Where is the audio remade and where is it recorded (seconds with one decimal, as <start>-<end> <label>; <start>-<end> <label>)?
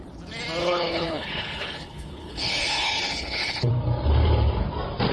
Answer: 0.0-0.6 recorded; 0.6-3.7 remade; 3.7-5.1 recorded